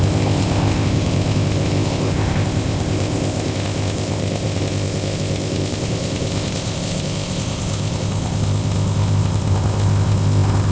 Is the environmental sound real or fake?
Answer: fake